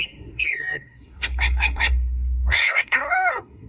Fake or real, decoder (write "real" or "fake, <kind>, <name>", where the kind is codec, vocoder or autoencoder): fake, codec, SNAC